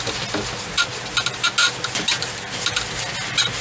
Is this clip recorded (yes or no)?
yes